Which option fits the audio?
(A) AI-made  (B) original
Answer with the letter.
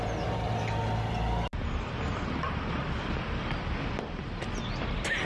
B